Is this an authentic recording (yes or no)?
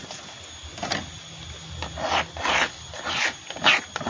yes